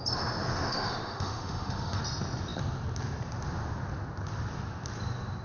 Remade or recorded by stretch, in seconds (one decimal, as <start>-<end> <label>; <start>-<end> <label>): 0.0-0.5 recorded; 0.5-2.0 remade; 2.0-5.4 recorded